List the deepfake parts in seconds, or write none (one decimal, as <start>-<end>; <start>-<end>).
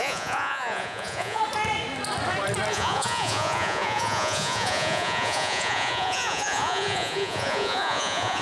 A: 0.0-1.4; 2.7-8.4